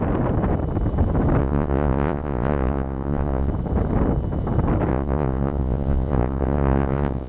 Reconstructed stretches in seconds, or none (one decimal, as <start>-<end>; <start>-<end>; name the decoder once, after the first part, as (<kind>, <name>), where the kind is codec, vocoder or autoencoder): 1.4-3.5 (vocoder, Vocos); 4.9-7.3